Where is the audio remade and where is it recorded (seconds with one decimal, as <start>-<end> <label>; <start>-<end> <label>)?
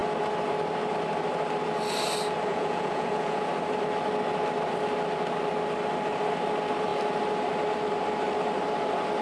0.0-2.5 recorded; 2.5-3.5 remade; 3.5-9.2 recorded